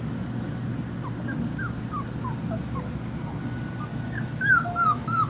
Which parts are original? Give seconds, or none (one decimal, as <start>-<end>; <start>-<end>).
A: 0.0-3.9